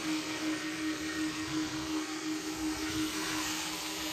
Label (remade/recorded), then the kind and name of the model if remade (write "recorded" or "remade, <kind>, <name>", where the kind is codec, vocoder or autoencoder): remade, codec, SNAC